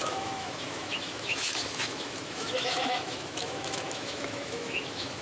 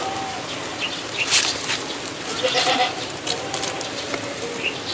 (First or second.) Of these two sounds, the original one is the second